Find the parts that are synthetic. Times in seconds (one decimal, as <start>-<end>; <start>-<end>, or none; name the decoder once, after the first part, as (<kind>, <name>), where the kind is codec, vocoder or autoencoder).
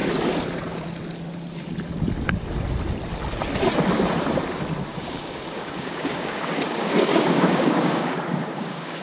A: 4.9-9.0 (codec, DAC)